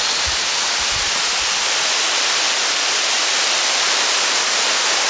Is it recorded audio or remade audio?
recorded